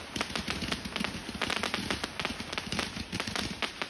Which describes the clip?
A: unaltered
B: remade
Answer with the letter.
A